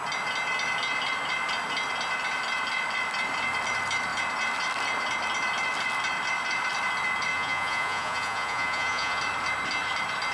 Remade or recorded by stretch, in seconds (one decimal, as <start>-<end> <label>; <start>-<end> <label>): 0.0-7.3 recorded; 7.3-9.2 remade; 9.2-10.3 recorded